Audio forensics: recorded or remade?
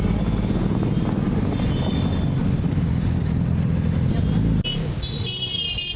recorded